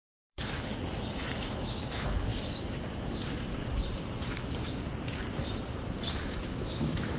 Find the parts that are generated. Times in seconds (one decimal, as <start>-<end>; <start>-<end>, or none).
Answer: 0.0-0.7; 1.4-2.3; 6.1-7.2